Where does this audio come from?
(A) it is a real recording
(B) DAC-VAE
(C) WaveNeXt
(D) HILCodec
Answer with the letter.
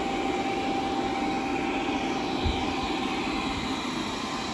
A